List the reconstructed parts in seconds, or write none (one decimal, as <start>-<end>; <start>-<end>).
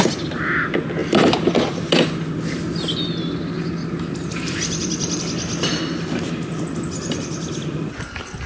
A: 1.0-2.1; 3.8-5.2